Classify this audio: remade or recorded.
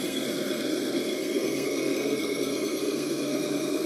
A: remade